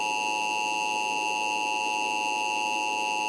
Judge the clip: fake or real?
real